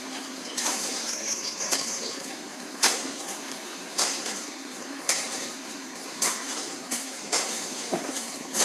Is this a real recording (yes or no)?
no